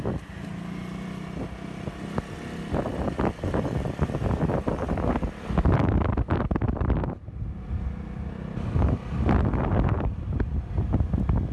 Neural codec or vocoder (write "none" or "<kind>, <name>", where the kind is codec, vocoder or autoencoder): none